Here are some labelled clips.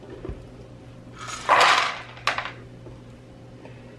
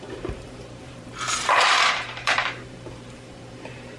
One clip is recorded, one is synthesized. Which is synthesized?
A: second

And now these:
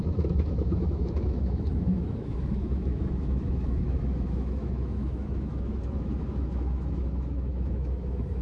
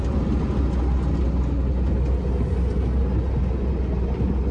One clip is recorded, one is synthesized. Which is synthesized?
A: first